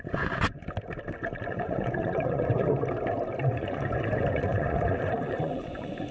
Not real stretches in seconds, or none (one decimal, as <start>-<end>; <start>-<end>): 0.0-0.6; 1.4-2.8; 3.5-6.1